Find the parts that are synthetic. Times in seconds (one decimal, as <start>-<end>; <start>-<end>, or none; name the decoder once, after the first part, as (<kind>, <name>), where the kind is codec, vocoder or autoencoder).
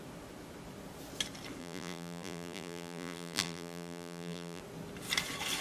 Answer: 1.6-4.6 (vocoder, BigVGAN v2)